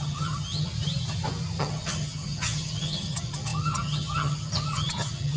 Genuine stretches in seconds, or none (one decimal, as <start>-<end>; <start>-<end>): 0.7-1.6